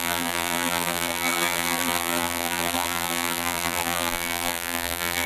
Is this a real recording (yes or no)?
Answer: no